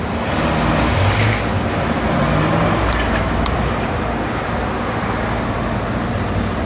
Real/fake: real